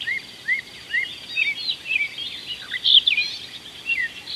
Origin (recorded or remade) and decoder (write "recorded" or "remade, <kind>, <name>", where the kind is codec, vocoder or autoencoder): remade, vocoder, BigVGAN v2